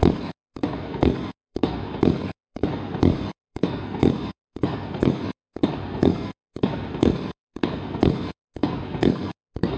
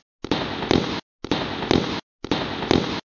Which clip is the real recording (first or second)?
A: second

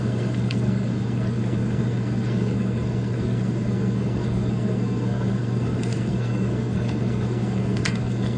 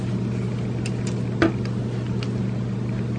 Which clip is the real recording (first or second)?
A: second